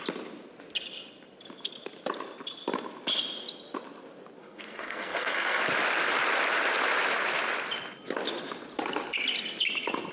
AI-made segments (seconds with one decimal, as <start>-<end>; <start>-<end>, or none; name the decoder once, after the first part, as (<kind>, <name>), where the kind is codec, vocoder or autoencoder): 4.4-5.6 (codec, SNAC)